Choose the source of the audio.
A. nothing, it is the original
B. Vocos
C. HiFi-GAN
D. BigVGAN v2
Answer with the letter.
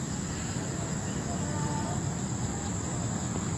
A